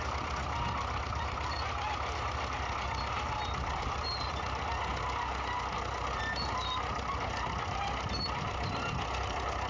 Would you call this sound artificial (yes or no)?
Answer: no